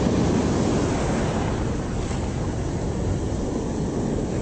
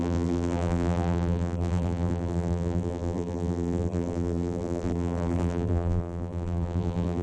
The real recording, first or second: first